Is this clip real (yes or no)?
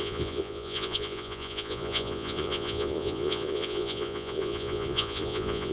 no